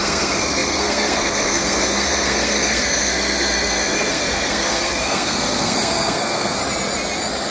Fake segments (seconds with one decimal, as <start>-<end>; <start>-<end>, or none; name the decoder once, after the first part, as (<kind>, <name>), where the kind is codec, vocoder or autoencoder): 0.0-6.6 (codec, SNAC)